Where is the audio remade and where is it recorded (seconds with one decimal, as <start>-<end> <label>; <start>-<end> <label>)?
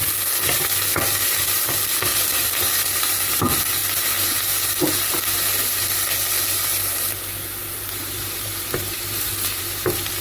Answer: 0.0-2.1 recorded; 2.1-3.4 remade; 3.4-7.4 recorded; 7.4-9.6 remade; 9.6-10.2 recorded